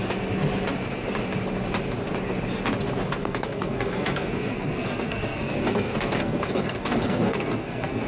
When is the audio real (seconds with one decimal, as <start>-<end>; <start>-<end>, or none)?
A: 0.0-3.2

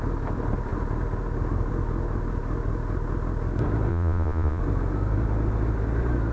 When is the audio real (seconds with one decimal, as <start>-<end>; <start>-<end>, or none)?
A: 0.0-3.9; 4.6-6.3

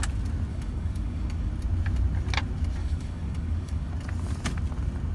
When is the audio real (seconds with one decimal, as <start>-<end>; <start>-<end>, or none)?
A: 0.0-0.5; 1.5-2.8; 3.9-5.1

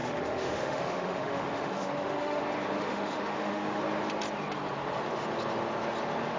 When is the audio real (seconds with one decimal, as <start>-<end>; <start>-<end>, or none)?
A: 2.4-2.8; 3.8-6.4

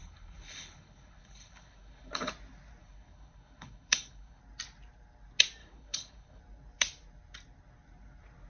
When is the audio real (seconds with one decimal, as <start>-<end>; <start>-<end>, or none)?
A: 2.3-2.8; 4.4-5.6; 6.4-8.5

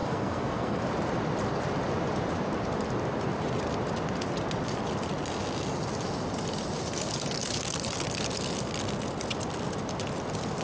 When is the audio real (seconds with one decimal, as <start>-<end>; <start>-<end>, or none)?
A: 0.8-10.6

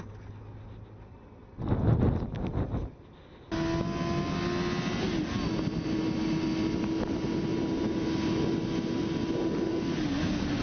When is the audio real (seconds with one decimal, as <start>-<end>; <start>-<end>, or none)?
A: 0.0-10.6

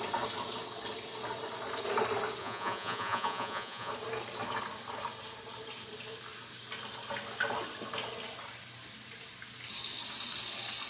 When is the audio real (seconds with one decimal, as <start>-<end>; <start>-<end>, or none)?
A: 0.0-2.4; 3.9-10.9